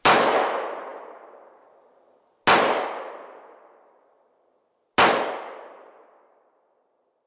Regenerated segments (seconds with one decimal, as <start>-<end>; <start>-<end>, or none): none